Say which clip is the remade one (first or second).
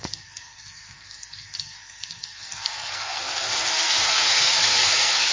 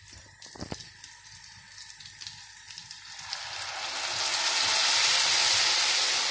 first